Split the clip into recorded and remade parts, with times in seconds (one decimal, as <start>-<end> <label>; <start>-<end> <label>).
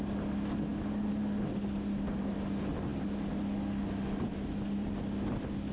0.0-5.7 recorded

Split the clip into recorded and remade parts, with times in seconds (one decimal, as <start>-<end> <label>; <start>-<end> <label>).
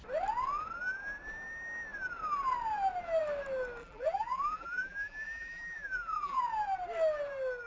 0.0-3.8 recorded; 3.8-6.4 remade; 6.4-7.7 recorded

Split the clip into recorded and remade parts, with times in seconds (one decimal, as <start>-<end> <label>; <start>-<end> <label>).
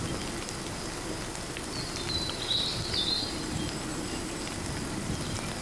0.0-3.9 recorded; 3.9-4.4 remade; 4.4-5.6 recorded